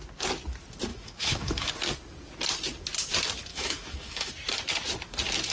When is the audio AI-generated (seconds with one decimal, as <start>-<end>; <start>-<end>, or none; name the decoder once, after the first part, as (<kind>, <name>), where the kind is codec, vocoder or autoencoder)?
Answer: 0.9-1.7 (autoencoder, DAC-VAE); 3.5-4.3